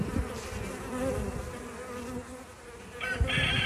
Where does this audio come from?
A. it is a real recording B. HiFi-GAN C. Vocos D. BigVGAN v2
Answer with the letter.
A